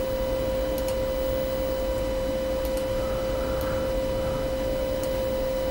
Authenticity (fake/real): real